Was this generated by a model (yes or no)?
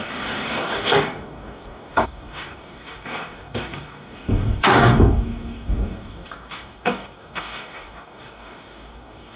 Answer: yes